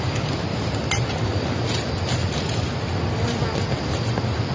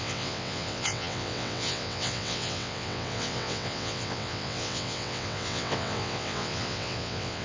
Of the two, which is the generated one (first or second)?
second